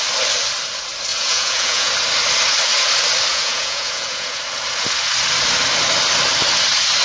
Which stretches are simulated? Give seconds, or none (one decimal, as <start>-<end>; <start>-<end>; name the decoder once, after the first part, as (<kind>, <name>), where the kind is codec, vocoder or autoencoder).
1.1-1.9 (vocoder, Vocos); 3.3-4.4